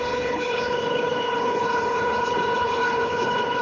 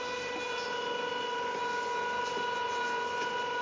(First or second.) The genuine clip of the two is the second